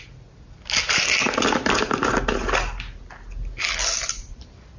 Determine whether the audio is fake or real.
real